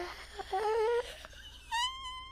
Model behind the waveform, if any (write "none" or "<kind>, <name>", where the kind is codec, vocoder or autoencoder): none